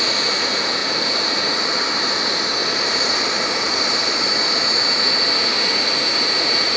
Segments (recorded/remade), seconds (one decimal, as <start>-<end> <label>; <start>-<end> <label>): 0.0-2.6 recorded; 2.6-4.3 remade; 4.3-6.8 recorded